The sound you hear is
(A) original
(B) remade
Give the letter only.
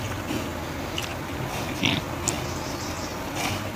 A